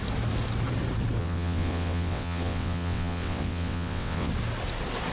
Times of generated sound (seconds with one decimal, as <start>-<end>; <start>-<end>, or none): 1.2-4.3